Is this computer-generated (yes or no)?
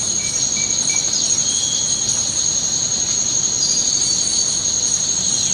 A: no